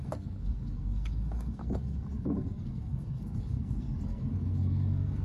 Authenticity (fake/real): fake